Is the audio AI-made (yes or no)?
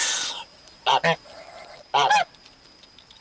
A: no